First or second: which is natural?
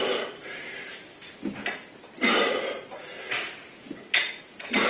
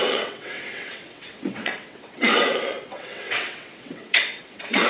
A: first